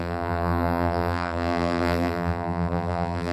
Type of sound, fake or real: fake